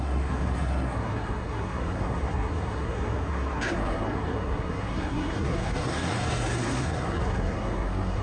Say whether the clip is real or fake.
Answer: fake